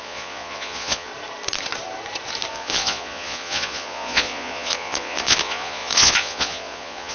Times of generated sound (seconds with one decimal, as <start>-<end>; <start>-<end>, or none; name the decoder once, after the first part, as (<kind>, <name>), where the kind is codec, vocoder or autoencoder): 0.0-1.1 (vocoder, Vocos); 2.5-7.1